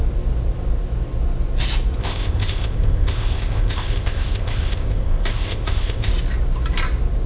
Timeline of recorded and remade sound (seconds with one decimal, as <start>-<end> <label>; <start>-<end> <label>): 0.0-2.0 recorded; 2.0-6.1 remade; 6.1-7.3 recorded